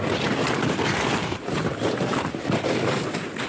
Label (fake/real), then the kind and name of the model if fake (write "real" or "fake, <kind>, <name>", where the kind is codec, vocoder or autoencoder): real